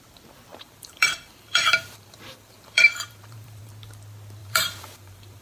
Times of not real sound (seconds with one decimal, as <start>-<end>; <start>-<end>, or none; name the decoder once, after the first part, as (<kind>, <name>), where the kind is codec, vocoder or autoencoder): 0.5-3.7 (vocoder, BigVGAN v2); 4.4-5.4